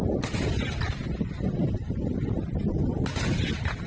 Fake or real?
real